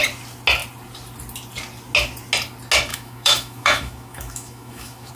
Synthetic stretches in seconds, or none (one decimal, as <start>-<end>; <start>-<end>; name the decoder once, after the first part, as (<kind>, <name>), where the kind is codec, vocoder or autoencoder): 2.9-5.1 (autoencoder, DAC-VAE)

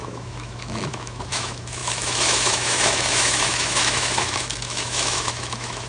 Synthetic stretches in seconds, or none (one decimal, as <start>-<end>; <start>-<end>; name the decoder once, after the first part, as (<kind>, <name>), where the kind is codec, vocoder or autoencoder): 0.0-5.9 (autoencoder, DAC-VAE)

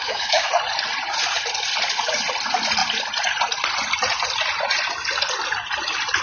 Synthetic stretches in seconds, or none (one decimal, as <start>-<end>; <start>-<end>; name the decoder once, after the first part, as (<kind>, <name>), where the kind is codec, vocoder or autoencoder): 0.0-0.5 (autoencoder, DAC-VAE)

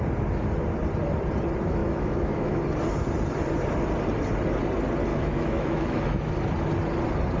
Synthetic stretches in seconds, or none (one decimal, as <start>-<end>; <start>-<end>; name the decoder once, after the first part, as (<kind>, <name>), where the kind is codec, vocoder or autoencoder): 1.8-2.6 (autoencoder, DAC-VAE); 5.1-6.3

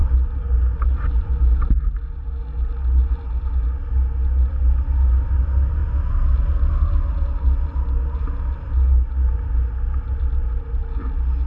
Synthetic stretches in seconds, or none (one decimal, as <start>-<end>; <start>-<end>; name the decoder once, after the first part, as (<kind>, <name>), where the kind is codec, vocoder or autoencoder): none

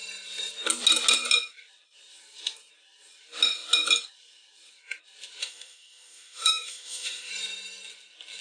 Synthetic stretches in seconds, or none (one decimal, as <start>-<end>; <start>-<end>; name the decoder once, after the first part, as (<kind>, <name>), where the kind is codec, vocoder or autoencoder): 5.4-7.3 (autoencoder, DAC-VAE)